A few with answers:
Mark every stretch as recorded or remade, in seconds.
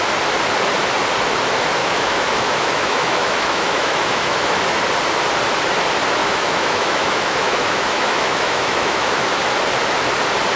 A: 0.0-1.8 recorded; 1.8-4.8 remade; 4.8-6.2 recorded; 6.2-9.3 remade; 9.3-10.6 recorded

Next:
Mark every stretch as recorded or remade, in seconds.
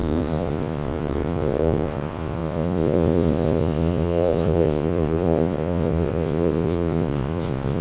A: 0.0-7.8 remade